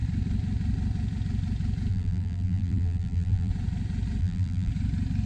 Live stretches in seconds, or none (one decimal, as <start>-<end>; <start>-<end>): 0.0-1.9; 3.5-4.2; 4.7-5.3